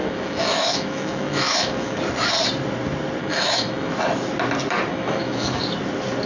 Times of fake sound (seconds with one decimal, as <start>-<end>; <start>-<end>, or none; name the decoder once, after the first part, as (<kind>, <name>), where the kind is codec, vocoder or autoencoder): 0.0-2.0 (autoencoder, DAC-VAE); 3.2-3.9; 4.9-5.6